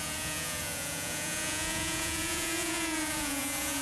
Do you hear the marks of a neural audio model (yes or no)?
yes